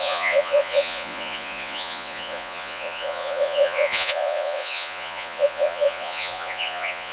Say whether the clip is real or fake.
fake